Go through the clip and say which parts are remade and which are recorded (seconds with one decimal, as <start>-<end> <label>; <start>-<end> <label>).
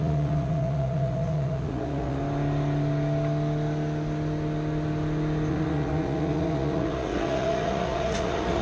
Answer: 0.0-2.2 remade; 2.2-5.5 recorded; 5.5-8.6 remade